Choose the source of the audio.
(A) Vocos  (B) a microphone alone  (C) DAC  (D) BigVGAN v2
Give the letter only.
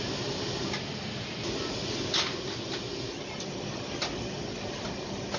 B